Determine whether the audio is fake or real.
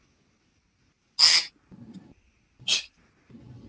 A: real